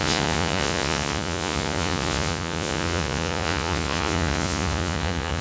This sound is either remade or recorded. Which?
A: remade